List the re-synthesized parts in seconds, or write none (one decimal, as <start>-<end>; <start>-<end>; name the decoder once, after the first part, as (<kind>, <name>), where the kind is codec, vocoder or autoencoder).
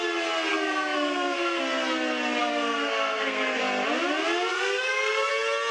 0.5-1.6 (codec, SNAC); 2.4-3.6; 4.5-5.3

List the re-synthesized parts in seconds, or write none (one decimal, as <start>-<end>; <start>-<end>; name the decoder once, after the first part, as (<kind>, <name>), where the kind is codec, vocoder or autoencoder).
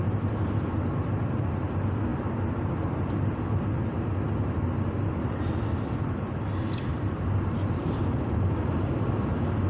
6.9-8.0 (vocoder, BigVGAN v2)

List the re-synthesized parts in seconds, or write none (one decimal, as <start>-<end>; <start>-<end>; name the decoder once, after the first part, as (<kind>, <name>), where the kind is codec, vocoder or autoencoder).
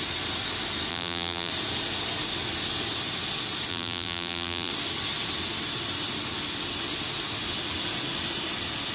0.9-1.5 (vocoder, BigVGAN v2); 3.7-4.7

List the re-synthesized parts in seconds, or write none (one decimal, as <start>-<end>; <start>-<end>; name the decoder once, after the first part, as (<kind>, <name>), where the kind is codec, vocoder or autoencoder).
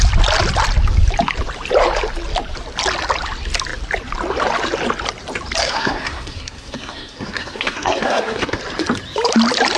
5.6-8.6 (codec, SNAC)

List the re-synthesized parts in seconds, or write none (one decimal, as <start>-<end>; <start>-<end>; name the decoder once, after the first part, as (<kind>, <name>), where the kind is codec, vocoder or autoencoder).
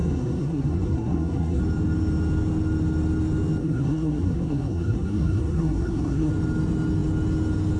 0.0-1.6 (codec, SNAC); 3.6-6.3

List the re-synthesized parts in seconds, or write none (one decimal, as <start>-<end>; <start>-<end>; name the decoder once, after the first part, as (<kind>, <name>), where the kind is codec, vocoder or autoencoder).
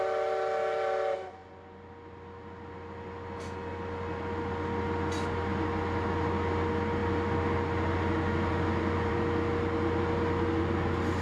none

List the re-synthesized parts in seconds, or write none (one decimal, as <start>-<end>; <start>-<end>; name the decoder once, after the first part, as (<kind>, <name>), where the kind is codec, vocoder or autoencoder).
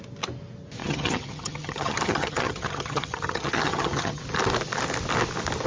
0.8-4.2 (vocoder, HiFi-GAN)